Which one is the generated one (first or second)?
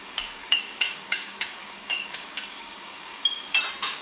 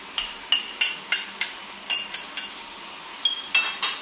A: first